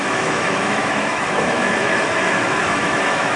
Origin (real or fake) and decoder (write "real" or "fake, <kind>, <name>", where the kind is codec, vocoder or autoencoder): fake, autoencoder, DAC-VAE